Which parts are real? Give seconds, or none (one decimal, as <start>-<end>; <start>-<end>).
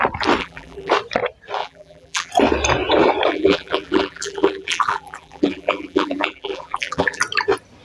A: 0.0-0.4; 0.9-1.6; 2.3-3.3; 7.2-7.8